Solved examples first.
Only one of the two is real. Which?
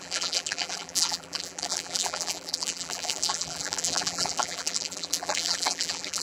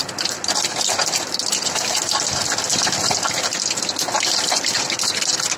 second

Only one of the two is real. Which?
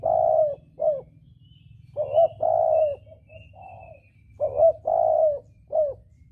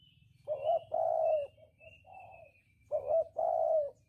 first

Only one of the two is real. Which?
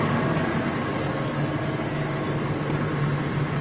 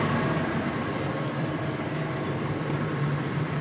first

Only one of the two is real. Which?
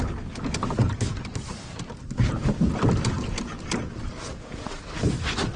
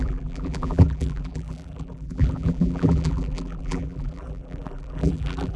first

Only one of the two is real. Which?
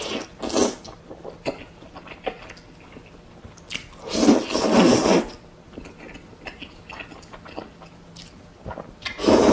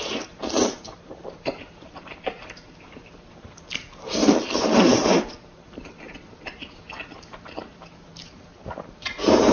first